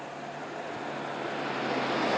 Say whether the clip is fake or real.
real